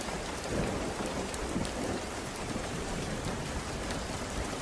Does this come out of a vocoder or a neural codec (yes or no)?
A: yes